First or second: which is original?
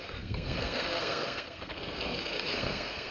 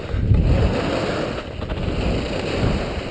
second